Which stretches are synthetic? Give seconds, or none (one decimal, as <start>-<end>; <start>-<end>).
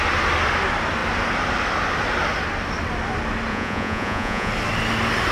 3.5-4.5